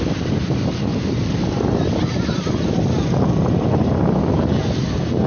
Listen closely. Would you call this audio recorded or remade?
recorded